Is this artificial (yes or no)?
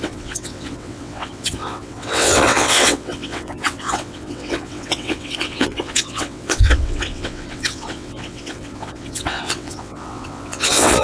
yes